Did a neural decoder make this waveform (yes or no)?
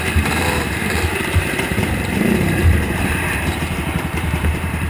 yes